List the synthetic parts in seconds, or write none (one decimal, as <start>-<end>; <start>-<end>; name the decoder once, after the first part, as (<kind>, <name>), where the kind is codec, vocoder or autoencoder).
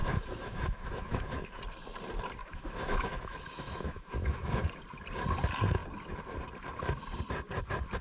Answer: 0.0-1.6 (autoencoder, DAC-VAE); 2.4-4.7